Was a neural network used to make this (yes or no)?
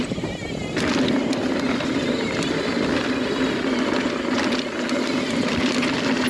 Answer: no